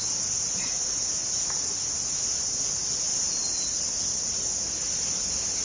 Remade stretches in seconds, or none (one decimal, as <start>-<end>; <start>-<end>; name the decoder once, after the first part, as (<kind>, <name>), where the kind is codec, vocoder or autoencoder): none